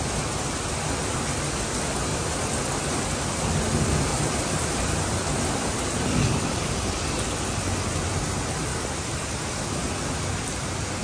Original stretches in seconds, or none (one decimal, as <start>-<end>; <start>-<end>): 0.0-2.1; 2.8-4.1; 6.7-11.0

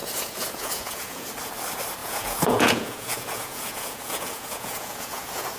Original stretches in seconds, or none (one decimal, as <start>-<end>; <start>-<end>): 1.3-2.0

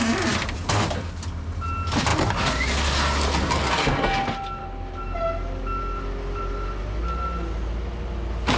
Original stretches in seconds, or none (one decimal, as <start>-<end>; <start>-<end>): 0.0-8.6

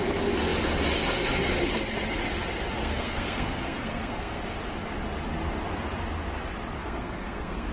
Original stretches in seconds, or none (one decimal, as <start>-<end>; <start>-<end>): 0.0-2.8; 4.4-6.8